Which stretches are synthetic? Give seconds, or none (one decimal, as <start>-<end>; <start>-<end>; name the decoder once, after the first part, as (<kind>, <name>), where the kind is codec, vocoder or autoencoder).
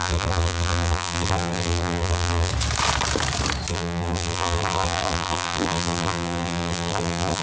0.0-2.5 (vocoder, BigVGAN v2); 3.7-7.4